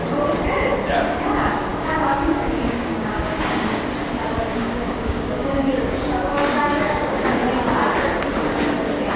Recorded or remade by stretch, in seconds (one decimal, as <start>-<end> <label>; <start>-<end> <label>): 0.0-1.7 recorded; 1.7-3.8 remade; 3.8-4.5 recorded; 4.5-7.4 remade; 7.4-9.2 recorded